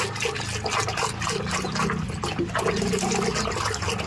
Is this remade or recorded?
recorded